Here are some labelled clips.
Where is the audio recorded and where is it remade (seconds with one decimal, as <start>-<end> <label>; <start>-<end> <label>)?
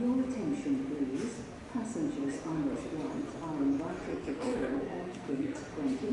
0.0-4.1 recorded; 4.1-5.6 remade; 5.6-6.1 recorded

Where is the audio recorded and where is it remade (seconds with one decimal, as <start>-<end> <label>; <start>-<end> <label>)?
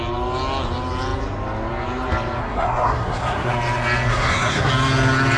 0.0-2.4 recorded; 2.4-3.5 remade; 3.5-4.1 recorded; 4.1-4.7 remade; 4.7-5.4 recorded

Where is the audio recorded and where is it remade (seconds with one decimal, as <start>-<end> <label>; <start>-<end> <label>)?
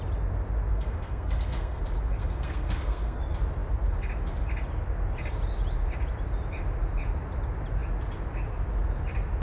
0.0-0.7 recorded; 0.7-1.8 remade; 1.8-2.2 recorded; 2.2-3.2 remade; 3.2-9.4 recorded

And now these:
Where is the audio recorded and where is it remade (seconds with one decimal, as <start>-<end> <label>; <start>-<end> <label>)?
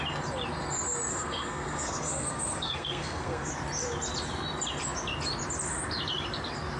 0.0-1.1 recorded; 1.1-3.5 remade; 3.5-6.8 recorded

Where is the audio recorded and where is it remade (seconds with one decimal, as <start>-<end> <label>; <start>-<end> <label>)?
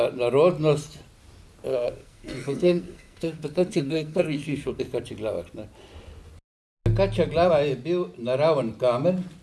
0.0-1.7 recorded; 1.7-4.8 remade; 4.8-9.4 recorded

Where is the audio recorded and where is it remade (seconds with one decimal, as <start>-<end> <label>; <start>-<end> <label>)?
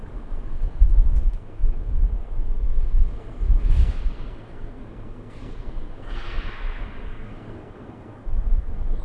0.0-9.0 remade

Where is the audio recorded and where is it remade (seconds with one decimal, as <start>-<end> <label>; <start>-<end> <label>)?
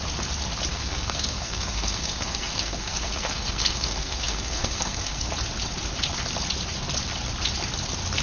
0.0-0.7 recorded; 0.7-5.3 remade; 5.3-8.2 recorded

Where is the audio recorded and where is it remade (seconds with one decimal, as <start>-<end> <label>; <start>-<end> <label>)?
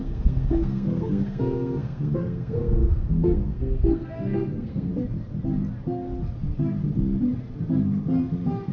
0.0-4.9 remade; 4.9-8.7 recorded